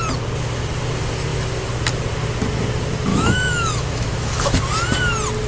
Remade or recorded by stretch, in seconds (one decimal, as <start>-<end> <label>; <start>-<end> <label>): 0.0-3.1 recorded; 3.1-4.6 remade; 4.6-5.5 recorded